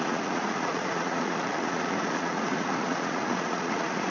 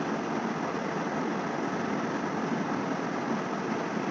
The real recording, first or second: second